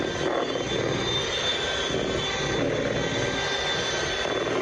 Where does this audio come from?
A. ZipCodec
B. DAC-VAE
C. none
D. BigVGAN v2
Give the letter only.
C